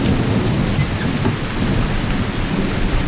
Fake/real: real